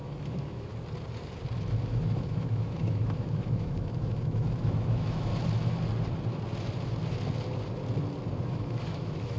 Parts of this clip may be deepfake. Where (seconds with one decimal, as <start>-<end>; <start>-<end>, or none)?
0.0-0.7; 1.8-5.3; 8.4-9.4